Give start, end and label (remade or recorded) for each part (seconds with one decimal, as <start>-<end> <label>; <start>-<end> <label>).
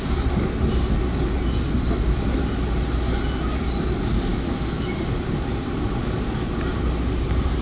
0.0-4.3 recorded; 4.3-4.9 remade; 4.9-7.6 recorded